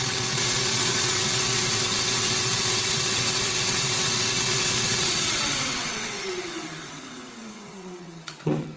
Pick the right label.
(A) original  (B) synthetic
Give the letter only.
B